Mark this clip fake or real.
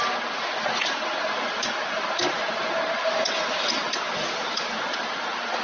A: real